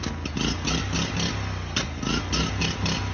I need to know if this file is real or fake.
real